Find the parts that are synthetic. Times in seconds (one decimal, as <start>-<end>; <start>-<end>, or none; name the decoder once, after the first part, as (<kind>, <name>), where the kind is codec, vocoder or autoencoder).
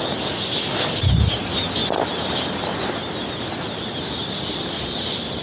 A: none